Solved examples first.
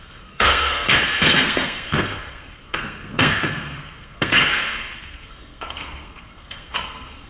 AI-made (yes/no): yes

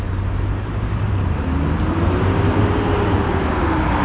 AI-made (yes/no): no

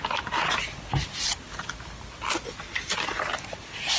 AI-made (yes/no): no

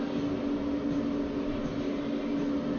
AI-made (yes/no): no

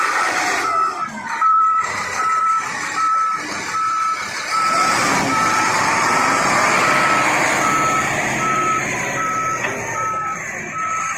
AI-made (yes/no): yes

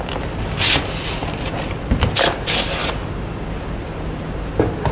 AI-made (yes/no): no